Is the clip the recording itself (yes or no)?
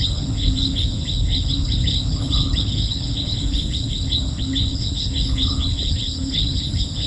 no